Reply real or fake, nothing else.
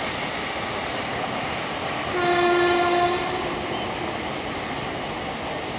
real